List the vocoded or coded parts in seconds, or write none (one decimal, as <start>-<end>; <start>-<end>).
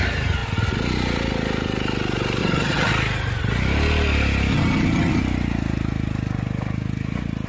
2.4-2.9; 4.5-5.2